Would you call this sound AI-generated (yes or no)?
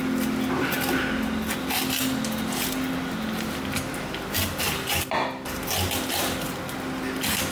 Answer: no